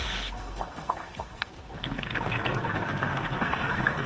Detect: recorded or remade remade